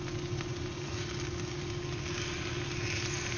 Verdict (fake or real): real